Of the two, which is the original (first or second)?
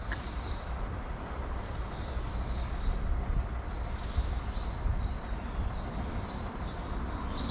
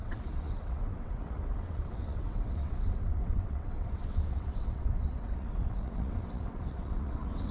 first